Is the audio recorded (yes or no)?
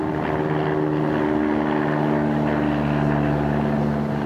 yes